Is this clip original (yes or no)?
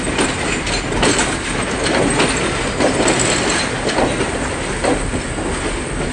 yes